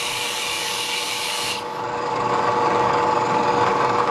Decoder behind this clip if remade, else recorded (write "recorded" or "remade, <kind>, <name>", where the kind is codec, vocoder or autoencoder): remade, codec, DAC